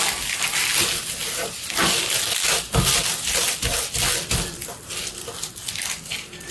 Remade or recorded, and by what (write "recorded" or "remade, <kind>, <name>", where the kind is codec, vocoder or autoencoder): recorded